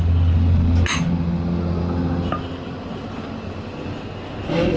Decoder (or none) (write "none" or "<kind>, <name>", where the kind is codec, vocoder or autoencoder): none